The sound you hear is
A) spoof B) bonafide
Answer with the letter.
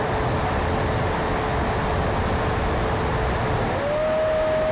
B